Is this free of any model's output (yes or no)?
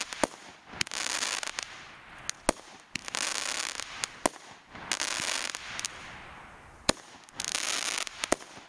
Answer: yes